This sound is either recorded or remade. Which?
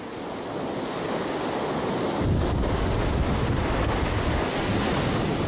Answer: recorded